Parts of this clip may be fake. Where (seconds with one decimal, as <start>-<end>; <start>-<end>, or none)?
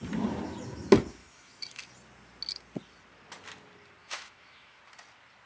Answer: 1.2-1.9; 4.0-4.8